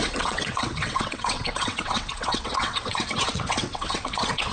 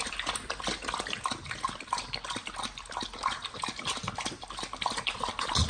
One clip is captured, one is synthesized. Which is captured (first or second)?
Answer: second